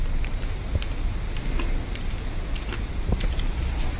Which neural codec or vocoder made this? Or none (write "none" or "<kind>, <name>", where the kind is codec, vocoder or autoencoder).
none